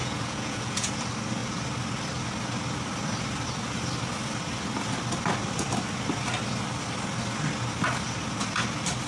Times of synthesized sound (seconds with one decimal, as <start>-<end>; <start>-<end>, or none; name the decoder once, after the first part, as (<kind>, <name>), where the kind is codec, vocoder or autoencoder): 0.0-0.9 (vocoder, Vocos)